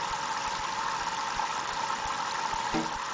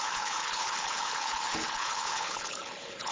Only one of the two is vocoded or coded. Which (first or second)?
second